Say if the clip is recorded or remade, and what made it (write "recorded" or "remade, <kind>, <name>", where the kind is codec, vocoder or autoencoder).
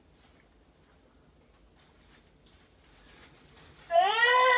recorded